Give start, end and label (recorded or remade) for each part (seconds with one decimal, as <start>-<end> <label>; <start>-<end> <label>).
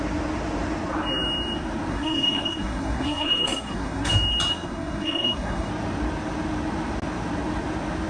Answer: 0.0-1.9 recorded; 1.9-4.1 remade; 4.1-4.5 recorded; 4.5-5.7 remade; 5.7-8.1 recorded